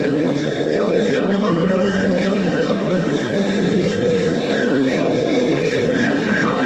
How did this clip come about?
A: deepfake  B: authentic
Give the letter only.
A